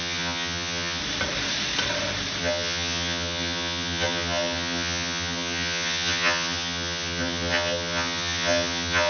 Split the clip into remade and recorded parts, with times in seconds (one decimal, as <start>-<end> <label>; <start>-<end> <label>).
0.0-1.0 remade; 1.0-2.4 recorded; 2.4-9.1 remade